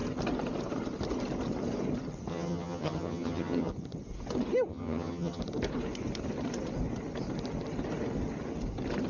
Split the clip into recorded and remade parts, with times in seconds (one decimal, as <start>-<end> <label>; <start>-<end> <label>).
0.0-2.3 recorded; 2.3-3.7 remade; 3.7-4.7 recorded; 4.7-5.4 remade; 5.4-9.1 recorded